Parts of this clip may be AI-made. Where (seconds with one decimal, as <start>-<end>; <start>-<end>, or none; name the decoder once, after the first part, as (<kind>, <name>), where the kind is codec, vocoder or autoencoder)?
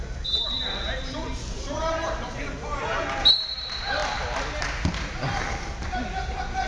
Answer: none